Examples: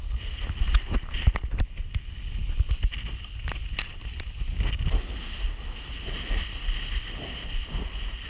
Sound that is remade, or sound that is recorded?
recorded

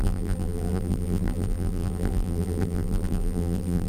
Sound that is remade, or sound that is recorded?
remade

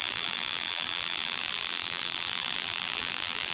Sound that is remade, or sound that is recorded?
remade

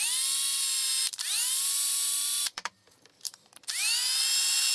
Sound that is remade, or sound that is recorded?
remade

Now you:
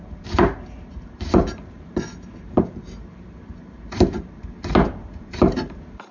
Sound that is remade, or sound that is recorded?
remade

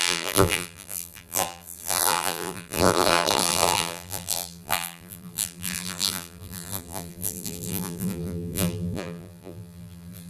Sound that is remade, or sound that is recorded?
remade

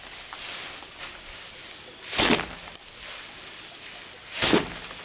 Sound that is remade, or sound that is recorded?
recorded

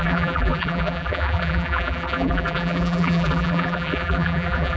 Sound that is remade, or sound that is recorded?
remade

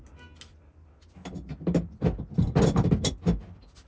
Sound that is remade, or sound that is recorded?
recorded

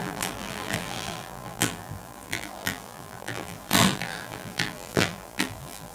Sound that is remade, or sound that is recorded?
remade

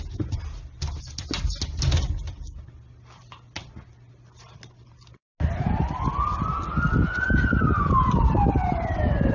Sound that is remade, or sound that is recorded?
recorded